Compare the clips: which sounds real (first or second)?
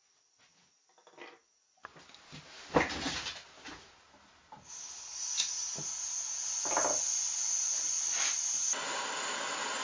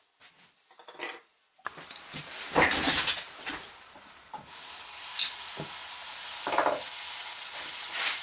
first